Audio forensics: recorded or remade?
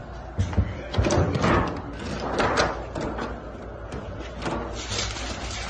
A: recorded